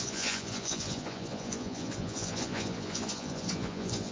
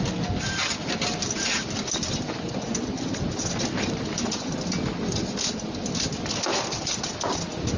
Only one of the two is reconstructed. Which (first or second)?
first